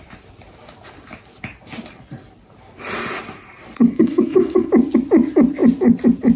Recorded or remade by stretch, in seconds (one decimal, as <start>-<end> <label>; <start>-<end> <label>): 0.0-3.9 recorded; 3.9-4.7 remade; 4.7-6.4 recorded